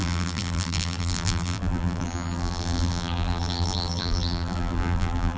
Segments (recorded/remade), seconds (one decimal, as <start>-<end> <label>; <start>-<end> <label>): 0.0-5.4 remade